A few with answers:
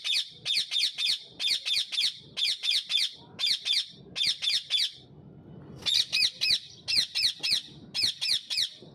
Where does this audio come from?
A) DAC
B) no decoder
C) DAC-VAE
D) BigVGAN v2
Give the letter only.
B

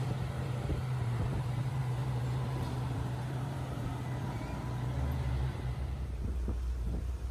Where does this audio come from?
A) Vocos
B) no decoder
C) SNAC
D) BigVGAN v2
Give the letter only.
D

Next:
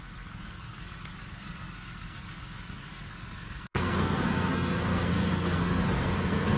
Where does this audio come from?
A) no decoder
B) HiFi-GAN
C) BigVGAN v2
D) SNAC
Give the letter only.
D